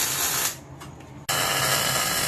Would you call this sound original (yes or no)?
yes